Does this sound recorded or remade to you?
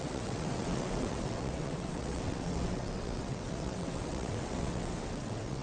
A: remade